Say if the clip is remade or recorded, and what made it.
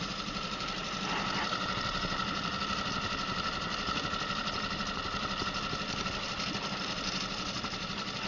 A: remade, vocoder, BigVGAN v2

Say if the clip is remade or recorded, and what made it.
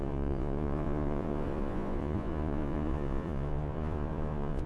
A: remade, vocoder, Vocos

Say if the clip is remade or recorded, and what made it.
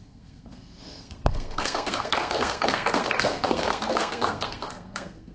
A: remade, codec, SNAC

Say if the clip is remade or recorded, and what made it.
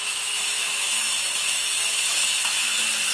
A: remade, autoencoder, DAC-VAE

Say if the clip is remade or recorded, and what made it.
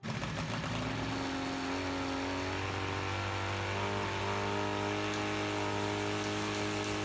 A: recorded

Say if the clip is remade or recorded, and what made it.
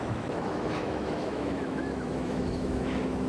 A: remade, autoencoder, DAC-VAE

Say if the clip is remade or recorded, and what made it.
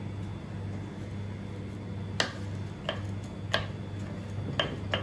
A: recorded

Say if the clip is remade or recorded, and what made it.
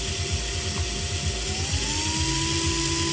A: recorded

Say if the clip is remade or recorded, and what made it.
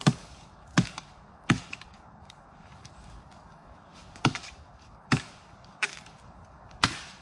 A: remade, codec, DAC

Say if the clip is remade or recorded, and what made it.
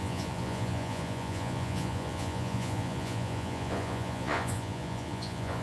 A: remade, vocoder, Vocos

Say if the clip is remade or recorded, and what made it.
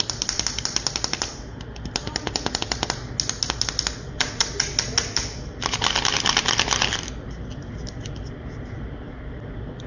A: recorded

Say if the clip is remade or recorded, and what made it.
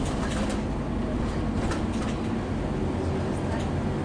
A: recorded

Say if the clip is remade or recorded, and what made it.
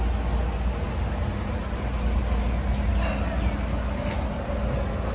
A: recorded